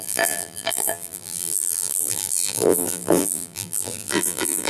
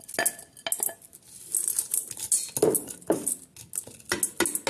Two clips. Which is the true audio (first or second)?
second